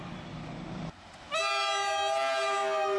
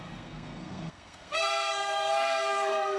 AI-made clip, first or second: second